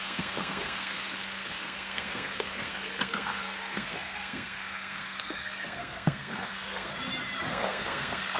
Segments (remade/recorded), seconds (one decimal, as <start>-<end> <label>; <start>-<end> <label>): 0.0-6.9 remade; 6.9-7.5 recorded; 7.5-8.4 remade